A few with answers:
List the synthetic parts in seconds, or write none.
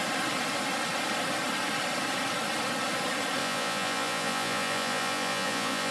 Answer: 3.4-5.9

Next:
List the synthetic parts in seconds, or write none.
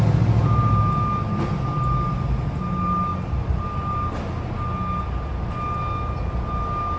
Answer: none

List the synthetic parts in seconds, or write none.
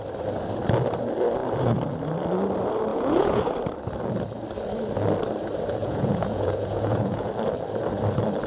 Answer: 2.9-3.4; 5.8-7.3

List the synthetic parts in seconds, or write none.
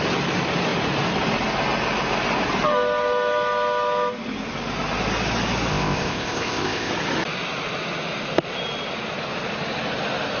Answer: 5.7-6.9